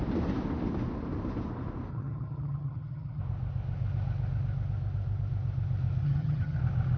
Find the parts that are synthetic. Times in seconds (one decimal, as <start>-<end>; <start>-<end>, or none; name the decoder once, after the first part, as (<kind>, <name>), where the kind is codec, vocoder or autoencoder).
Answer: 1.9-3.2 (vocoder, HiFi-GAN); 6.0-6.6